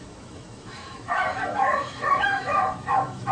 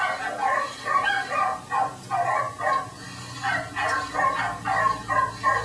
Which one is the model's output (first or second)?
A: first